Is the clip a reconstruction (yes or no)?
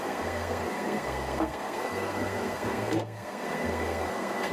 yes